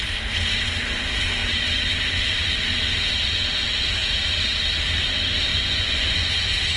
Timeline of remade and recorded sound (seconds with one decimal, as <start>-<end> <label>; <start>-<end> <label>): 0.0-5.5 recorded; 5.5-6.3 remade; 6.3-6.8 recorded